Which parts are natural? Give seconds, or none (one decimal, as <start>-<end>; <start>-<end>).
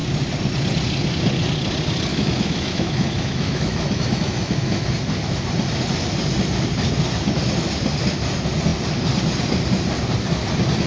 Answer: 0.0-2.1; 4.8-10.9